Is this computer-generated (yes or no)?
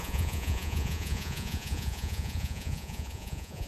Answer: yes